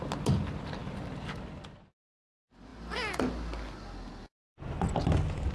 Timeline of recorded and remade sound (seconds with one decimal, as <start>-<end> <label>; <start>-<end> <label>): 0.0-5.5 recorded